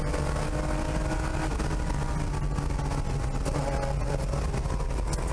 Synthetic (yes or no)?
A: no